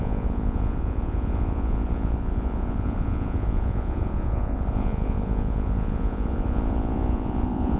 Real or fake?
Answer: fake